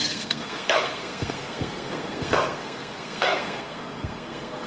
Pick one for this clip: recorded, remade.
remade